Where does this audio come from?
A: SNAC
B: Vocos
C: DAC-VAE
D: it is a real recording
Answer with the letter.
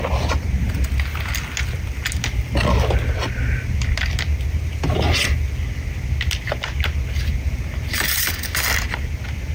D